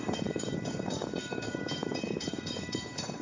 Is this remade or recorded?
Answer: remade